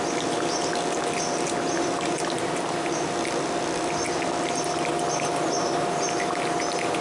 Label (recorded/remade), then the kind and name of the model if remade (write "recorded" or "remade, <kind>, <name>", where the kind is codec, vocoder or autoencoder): recorded